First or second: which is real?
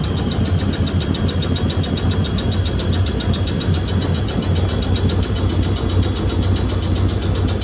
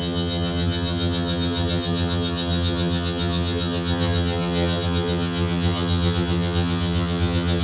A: first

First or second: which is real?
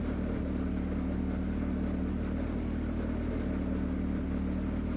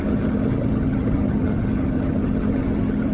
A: first